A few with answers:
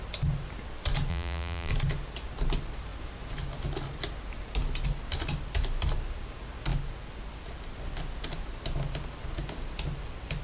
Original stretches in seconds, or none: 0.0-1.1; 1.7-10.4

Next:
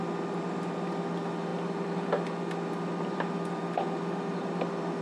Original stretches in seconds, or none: 0.0-5.0